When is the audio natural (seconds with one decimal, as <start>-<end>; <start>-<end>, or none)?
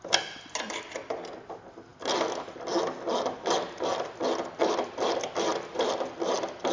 0.0-4.6; 5.9-6.7